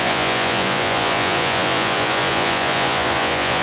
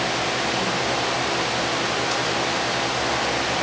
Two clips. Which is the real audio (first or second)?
second